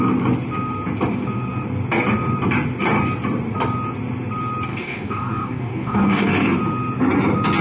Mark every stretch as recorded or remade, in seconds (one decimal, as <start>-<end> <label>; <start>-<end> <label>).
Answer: 0.0-4.7 recorded; 4.7-6.3 remade; 6.3-7.6 recorded